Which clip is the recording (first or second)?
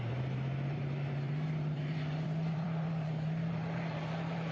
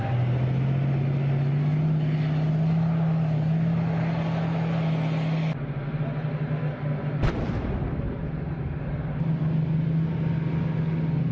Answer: second